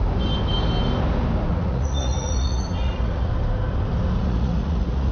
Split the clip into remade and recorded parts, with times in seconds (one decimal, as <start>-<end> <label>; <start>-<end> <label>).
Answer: 0.0-1.5 recorded; 1.5-3.3 remade; 3.3-4.2 recorded; 4.2-5.1 remade